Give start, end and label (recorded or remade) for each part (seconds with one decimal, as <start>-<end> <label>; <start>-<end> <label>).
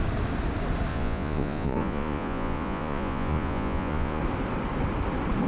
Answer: 0.0-0.9 recorded; 0.9-4.2 remade; 4.2-5.5 recorded